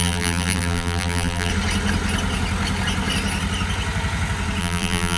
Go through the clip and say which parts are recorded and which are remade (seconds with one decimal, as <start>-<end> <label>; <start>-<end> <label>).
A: 0.0-1.5 remade; 1.5-4.6 recorded; 4.6-5.2 remade